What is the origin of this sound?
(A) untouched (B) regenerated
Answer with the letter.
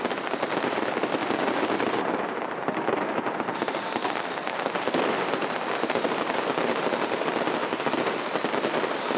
B